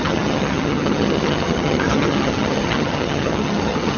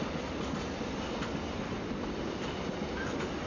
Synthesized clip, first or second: first